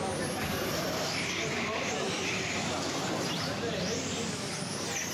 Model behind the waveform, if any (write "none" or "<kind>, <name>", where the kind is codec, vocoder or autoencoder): vocoder, BigVGAN v2